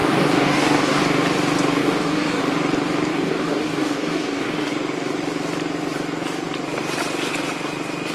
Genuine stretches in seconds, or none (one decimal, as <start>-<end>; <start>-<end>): 1.0-1.8; 2.4-3.1; 4.7-8.1